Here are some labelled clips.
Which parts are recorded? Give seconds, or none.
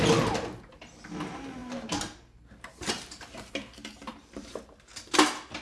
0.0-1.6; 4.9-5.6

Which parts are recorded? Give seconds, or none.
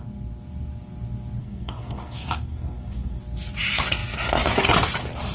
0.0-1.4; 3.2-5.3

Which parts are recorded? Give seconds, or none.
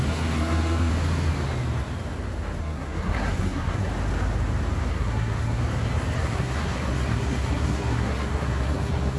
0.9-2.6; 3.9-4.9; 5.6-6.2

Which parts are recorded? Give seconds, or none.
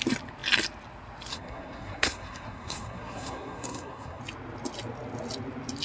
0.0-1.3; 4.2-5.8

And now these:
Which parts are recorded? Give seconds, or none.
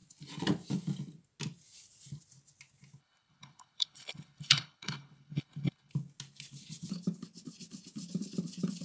0.0-3.0; 5.9-8.8